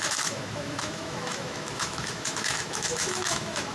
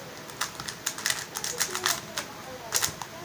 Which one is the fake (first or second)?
first